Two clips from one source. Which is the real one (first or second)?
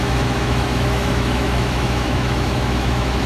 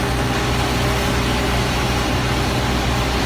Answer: second